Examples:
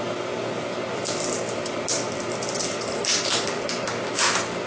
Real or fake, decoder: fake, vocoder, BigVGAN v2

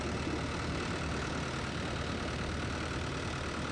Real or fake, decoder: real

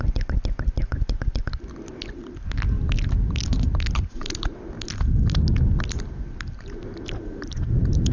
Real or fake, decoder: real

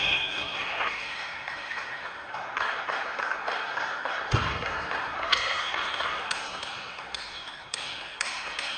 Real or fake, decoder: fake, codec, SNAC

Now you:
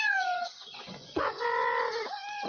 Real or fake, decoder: fake, vocoder, Vocos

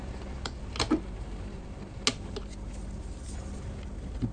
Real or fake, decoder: real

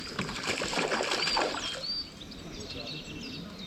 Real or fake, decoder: real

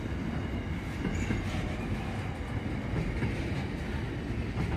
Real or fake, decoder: real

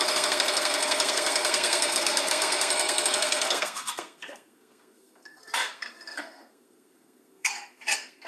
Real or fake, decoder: fake, codec, SNAC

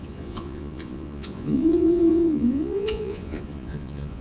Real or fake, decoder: fake, vocoder, Vocos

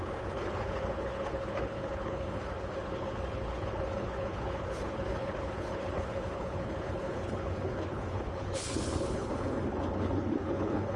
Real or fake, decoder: fake, codec, HILCodec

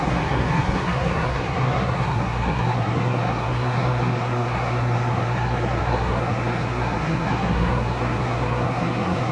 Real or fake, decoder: fake, codec, SNAC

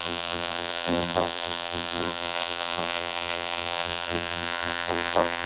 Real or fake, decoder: fake, vocoder, BigVGAN v2